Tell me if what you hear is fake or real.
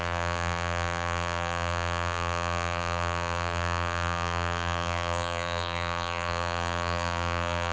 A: fake